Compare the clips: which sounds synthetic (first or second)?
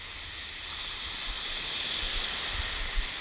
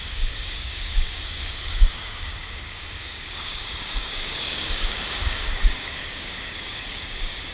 second